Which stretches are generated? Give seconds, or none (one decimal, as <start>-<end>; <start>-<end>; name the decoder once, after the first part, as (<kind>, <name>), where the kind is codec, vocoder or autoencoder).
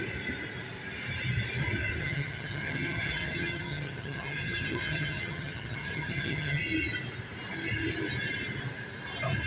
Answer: 2.0-6.6 (vocoder, HiFi-GAN)